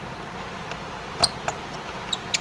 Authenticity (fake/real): real